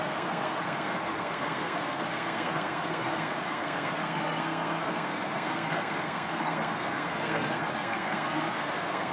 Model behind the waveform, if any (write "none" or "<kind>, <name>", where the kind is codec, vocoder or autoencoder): codec, SNAC